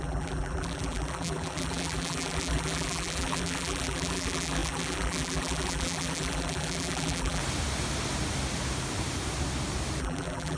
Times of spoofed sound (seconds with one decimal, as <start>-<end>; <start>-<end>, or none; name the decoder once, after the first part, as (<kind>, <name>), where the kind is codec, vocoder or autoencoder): 0.0-7.4 (vocoder, BigVGAN v2); 10.0-10.6